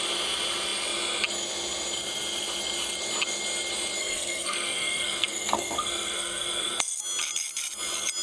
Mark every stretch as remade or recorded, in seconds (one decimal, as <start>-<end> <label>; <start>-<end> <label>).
0.0-4.0 recorded; 4.0-7.0 remade; 7.0-8.2 recorded